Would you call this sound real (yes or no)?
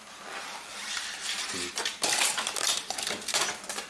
yes